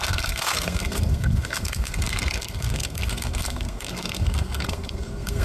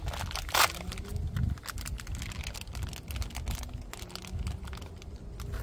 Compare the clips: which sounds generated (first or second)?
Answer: first